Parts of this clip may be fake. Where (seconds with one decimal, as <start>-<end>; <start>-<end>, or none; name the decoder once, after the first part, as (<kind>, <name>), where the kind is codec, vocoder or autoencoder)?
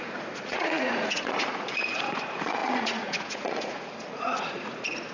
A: 0.0-5.1 (vocoder, Vocos)